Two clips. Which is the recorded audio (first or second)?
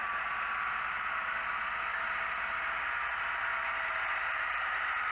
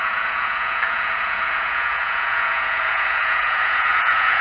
first